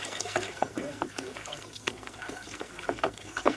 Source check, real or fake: fake